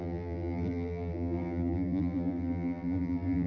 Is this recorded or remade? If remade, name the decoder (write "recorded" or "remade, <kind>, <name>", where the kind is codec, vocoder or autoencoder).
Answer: remade, vocoder, BigVGAN v2